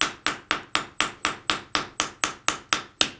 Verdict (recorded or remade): recorded